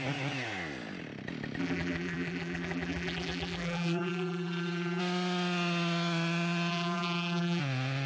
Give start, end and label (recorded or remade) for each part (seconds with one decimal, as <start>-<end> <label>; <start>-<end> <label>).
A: 0.0-1.6 recorded; 1.6-5.0 remade; 5.0-6.7 recorded; 6.7-7.6 remade; 7.6-8.1 recorded